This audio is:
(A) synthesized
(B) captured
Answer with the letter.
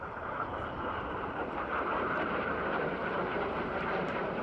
A